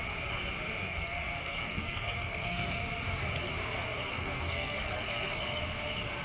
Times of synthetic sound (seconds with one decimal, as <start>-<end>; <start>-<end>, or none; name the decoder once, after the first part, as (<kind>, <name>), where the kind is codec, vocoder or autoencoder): 0.8-2.8 (codec, SNAC); 4.1-5.6